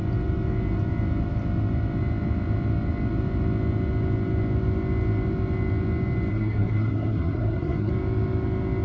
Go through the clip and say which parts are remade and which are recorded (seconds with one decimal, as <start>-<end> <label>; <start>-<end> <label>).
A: 0.0-6.3 recorded; 6.3-7.9 remade; 7.9-8.8 recorded